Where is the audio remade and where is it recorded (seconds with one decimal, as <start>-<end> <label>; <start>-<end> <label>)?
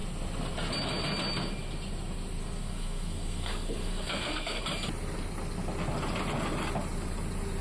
0.0-2.4 recorded; 2.4-4.6 remade; 4.6-7.6 recorded